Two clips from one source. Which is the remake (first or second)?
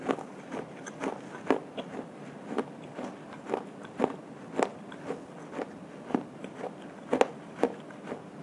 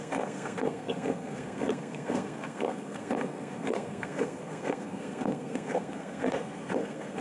second